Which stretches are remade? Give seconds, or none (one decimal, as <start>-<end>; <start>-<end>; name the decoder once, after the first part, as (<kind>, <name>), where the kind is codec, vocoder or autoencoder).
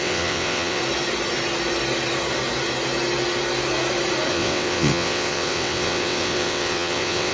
0.0-0.8 (vocoder, WaveNeXt); 4.3-7.3